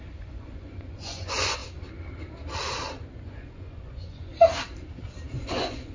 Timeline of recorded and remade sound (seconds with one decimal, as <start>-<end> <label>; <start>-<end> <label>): 0.0-1.6 remade; 1.6-3.2 recorded; 3.2-4.3 remade; 4.3-5.3 recorded; 5.3-5.9 remade